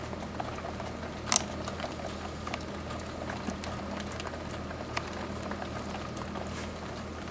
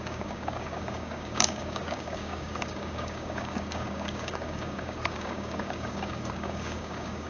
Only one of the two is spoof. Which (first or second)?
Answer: second